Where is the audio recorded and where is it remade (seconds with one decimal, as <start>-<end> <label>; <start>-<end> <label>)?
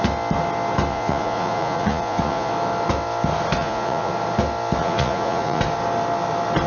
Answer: 0.0-0.9 recorded; 0.9-2.5 remade; 2.5-3.6 recorded; 3.6-4.1 remade; 4.1-4.8 recorded; 4.8-5.6 remade; 5.6-6.7 recorded